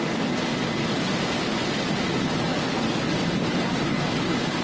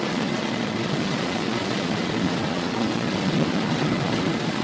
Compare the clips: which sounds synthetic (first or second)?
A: second